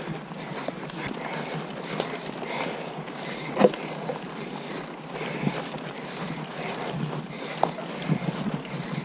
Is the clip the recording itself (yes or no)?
yes